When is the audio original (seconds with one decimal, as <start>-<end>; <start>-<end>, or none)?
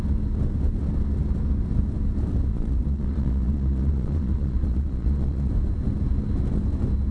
0.0-2.5; 5.5-7.1